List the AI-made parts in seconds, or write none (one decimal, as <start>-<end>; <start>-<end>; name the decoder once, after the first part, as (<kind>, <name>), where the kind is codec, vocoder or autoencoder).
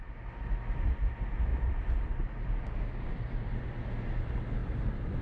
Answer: 1.5-3.6 (vocoder, BigVGAN v2); 4.6-5.2